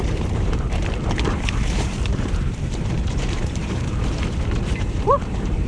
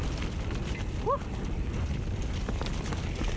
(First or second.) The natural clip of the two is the second